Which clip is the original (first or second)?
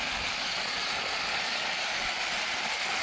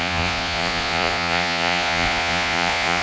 first